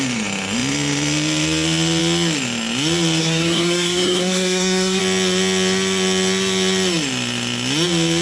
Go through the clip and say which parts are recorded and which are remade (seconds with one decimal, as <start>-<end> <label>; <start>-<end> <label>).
0.0-3.2 recorded; 3.2-5.0 remade; 5.0-8.2 recorded